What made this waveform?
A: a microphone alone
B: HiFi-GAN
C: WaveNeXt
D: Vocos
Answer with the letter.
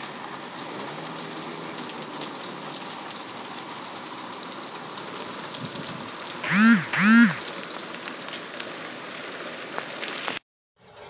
A